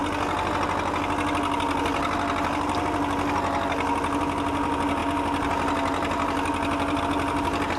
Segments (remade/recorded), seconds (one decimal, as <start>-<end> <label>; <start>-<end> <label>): 0.0-7.8 recorded

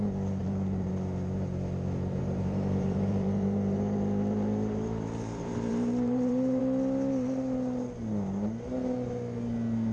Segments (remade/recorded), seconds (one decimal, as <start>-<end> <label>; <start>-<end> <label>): 0.0-0.4 recorded; 0.4-0.9 remade; 0.9-2.2 recorded; 2.2-6.6 remade; 6.6-9.9 recorded